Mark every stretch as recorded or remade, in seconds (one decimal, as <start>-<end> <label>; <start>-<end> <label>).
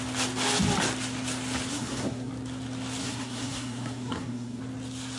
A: 0.0-1.7 recorded; 1.7-2.3 remade; 2.3-3.0 recorded; 3.0-4.6 remade; 4.6-5.2 recorded